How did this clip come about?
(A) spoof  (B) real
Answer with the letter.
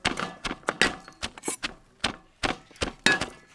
B